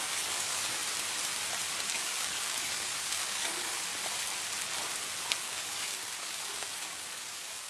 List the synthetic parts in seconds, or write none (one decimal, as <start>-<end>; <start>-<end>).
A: 0.0-0.8; 1.9-3.9; 5.4-7.7